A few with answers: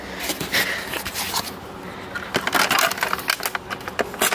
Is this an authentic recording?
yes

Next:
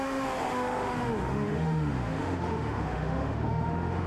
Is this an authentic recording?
no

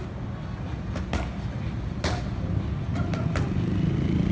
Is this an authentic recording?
yes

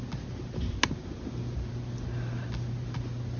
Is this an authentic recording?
yes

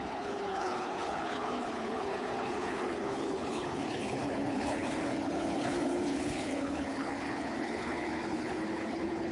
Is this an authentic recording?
no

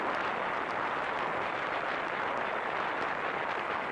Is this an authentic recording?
yes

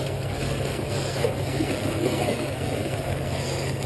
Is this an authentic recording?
no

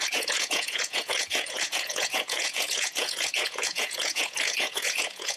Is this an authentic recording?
no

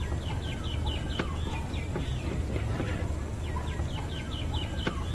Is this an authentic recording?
yes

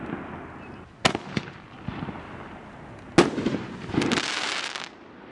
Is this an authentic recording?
yes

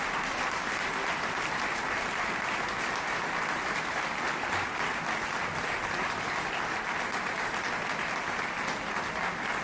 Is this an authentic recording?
yes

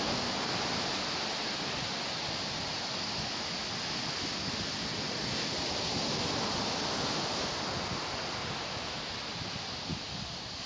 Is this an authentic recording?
yes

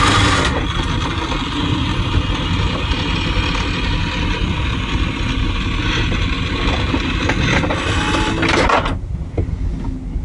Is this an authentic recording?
yes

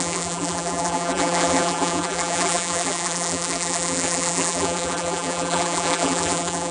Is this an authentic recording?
no